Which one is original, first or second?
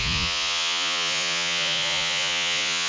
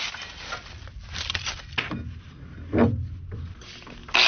second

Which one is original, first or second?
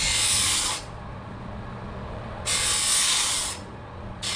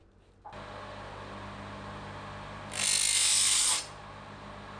second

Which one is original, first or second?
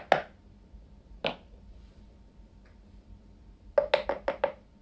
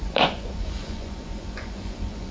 first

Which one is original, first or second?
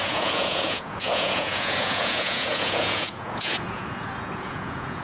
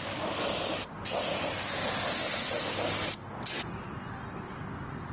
second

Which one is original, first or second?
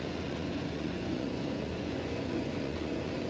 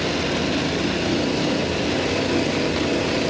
second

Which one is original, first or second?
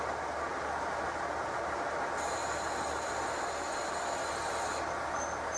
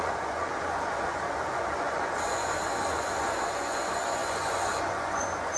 first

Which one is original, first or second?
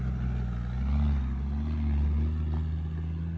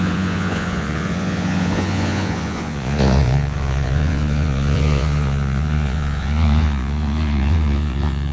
first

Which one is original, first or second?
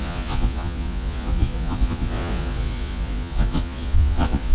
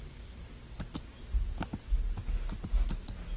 second